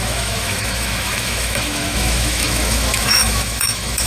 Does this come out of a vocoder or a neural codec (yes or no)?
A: yes